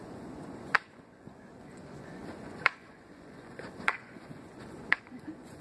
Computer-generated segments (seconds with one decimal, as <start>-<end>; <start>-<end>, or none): 0.0-5.6